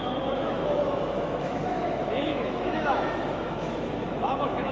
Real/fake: fake